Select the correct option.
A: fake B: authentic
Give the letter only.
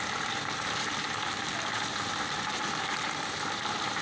A